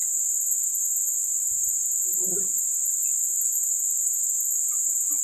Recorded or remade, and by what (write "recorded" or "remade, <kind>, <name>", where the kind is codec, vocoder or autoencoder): recorded